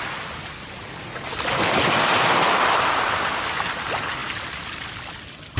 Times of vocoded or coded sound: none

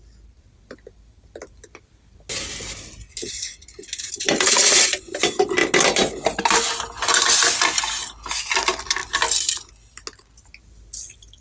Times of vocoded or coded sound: none

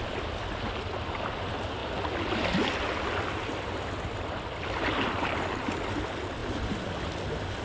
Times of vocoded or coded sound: none

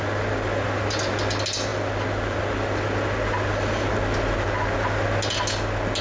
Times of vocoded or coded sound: none

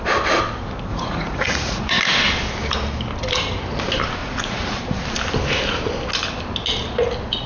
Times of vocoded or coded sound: 0.9-2.0 (vocoder, Vocos); 4.2-4.8